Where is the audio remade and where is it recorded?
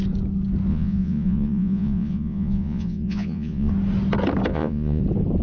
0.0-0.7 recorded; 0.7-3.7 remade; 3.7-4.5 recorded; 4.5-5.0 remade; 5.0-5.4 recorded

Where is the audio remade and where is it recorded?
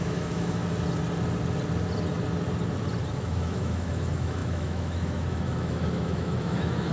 0.0-0.6 remade; 0.6-3.1 recorded; 3.1-6.9 remade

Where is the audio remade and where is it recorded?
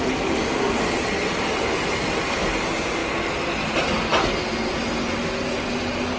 0.0-6.2 recorded